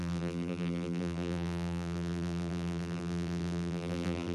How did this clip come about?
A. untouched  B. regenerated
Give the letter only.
B